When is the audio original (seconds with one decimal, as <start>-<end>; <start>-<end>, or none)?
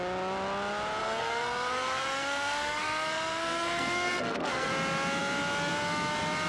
0.0-1.0; 4.7-6.5